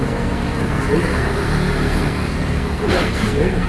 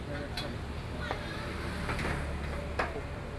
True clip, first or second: second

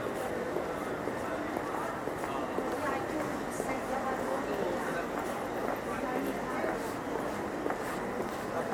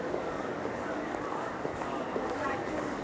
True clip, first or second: first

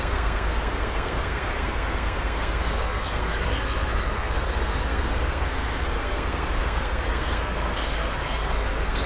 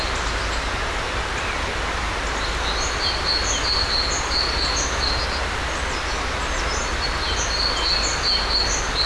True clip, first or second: second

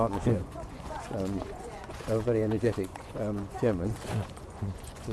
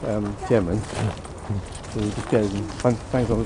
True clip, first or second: second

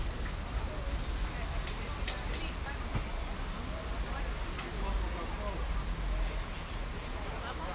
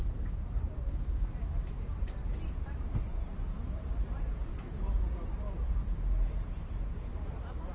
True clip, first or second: first